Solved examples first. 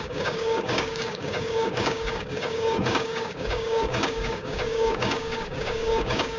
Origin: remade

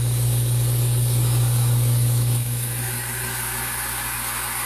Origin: remade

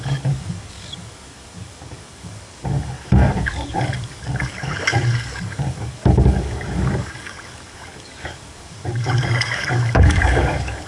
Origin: remade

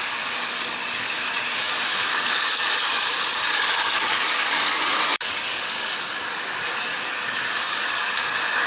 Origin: remade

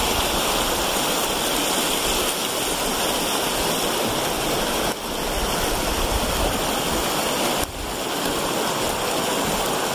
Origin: recorded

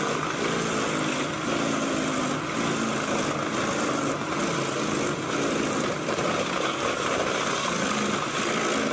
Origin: recorded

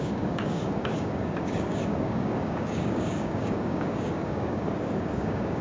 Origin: remade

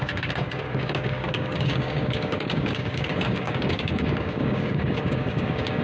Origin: remade